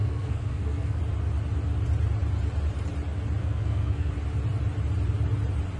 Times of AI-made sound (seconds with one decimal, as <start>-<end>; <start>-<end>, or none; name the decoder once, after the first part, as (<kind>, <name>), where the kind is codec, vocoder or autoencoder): 0.0-1.0 (codec, SNAC); 3.4-4.1